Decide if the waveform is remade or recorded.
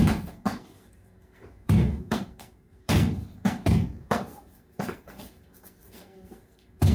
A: remade